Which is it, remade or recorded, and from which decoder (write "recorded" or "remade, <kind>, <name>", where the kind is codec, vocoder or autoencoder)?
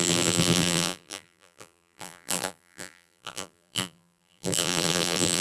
remade, vocoder, BigVGAN v2